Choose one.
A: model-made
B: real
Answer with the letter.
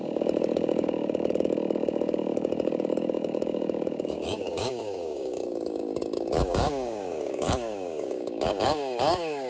A